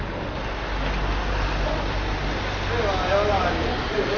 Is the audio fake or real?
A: real